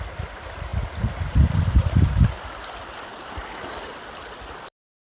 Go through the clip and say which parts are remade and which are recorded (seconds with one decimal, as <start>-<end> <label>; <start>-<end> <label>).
0.0-3.1 remade; 3.1-4.0 recorded; 4.0-5.2 remade